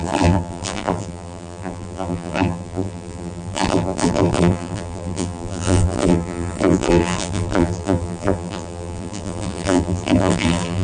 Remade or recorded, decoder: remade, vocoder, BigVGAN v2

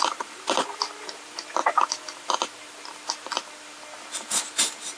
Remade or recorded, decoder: recorded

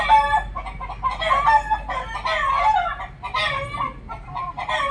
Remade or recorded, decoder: recorded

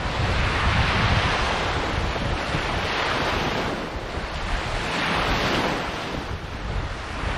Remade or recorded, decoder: recorded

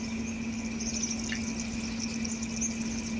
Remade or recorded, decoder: recorded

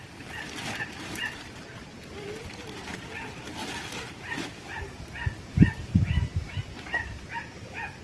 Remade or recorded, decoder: recorded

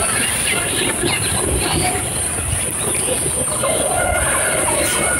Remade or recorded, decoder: remade, vocoder, BigVGAN v2